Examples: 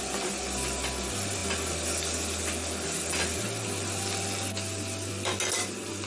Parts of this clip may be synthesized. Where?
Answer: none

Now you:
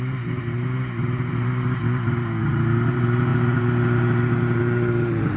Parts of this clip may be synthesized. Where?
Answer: 0.0-1.8 (vocoder, BigVGAN v2); 2.5-5.4

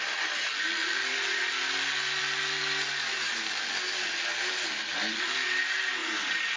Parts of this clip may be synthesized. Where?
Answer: 0.8-2.2 (vocoder, BigVGAN v2)